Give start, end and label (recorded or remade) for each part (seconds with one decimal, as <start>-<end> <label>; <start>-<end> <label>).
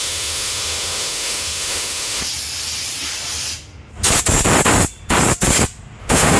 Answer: 0.0-2.2 remade; 2.2-6.0 recorded; 6.0-6.4 remade